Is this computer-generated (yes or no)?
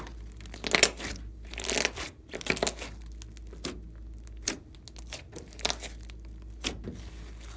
no